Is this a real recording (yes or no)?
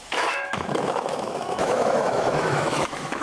no